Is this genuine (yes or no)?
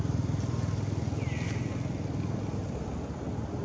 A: yes